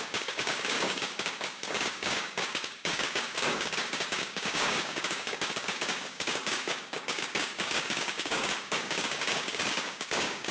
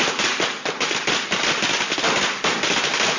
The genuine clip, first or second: second